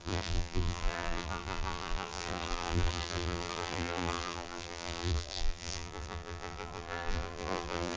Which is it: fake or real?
fake